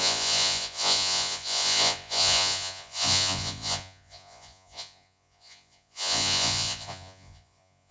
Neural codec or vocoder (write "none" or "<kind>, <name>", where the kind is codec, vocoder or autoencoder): vocoder, Vocos